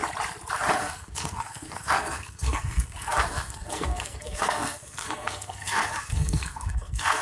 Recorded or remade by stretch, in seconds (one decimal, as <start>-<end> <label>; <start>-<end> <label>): 0.0-0.8 recorded; 0.8-7.2 remade